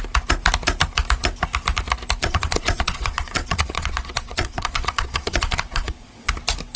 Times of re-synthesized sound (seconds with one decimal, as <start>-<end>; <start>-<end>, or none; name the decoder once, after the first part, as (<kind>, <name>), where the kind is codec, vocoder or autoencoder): 2.2-6.3 (vocoder, Vocos)